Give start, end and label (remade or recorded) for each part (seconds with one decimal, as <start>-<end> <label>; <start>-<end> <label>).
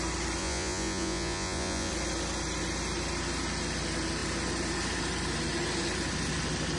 0.0-0.4 recorded; 0.4-1.9 remade; 1.9-6.8 recorded